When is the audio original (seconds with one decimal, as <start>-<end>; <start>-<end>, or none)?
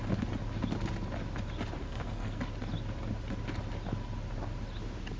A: 0.0-1.8; 2.4-5.2